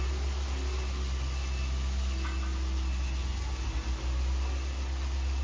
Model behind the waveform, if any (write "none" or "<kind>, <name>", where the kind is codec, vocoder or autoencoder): none